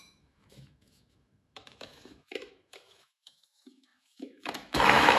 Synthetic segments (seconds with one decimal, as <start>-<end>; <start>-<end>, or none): 0.0-5.2